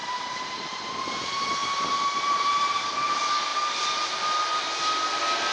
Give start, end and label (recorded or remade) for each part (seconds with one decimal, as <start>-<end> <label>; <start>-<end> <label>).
0.0-0.9 remade; 0.9-1.6 recorded; 1.6-2.8 remade; 2.8-5.5 recorded

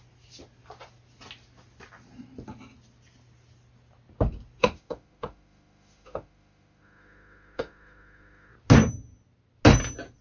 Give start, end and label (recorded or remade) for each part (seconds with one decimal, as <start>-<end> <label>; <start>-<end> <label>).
0.0-4.6 recorded; 4.6-8.5 remade; 8.5-10.2 recorded

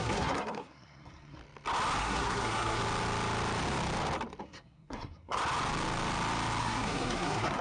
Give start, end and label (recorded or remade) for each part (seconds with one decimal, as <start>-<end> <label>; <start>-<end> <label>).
0.0-1.4 remade; 1.4-2.0 recorded; 2.0-2.8 remade; 2.8-4.4 recorded; 4.4-5.4 remade; 5.4-6.6 recorded; 6.6-7.6 remade